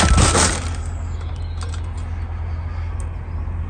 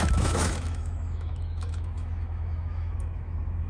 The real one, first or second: first